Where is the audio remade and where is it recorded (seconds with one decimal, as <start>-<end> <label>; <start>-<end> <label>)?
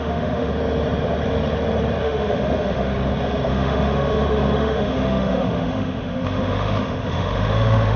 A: 0.0-0.5 remade; 0.5-2.0 recorded; 2.0-2.9 remade; 2.9-3.5 recorded; 3.5-8.0 remade